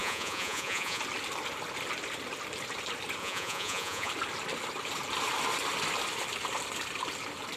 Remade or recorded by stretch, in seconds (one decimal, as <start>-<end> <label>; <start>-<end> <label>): 0.0-1.0 remade; 1.0-3.2 recorded; 3.2-4.1 remade; 4.1-7.6 recorded